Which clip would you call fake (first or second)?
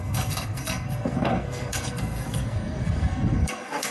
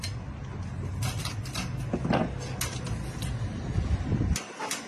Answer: first